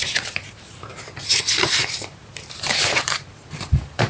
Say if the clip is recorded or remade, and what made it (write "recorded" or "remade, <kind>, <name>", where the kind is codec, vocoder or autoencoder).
remade, vocoder, BigVGAN v2